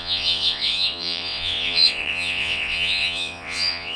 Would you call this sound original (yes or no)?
no